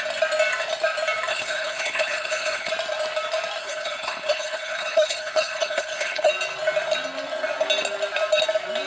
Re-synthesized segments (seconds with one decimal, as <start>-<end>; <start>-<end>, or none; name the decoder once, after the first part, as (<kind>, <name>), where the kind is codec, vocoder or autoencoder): 1.3-2.7 (codec, HILCodec); 3.6-6.3